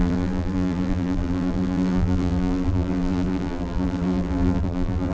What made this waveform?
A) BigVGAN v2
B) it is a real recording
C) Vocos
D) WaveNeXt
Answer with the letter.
A